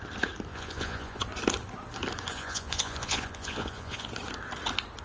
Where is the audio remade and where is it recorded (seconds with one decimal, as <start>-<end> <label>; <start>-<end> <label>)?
0.0-0.5 recorded; 0.5-1.2 remade; 1.2-2.3 recorded; 2.3-4.1 remade; 4.1-5.0 recorded